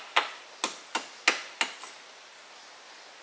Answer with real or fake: real